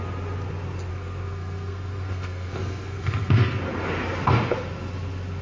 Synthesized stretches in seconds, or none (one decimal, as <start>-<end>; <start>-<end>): 0.9-3.6